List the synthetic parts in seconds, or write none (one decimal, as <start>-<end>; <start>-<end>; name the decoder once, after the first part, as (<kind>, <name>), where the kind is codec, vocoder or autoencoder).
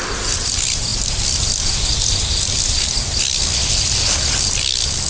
none